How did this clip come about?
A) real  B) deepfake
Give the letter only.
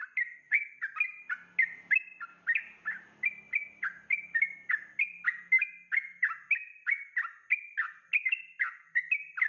A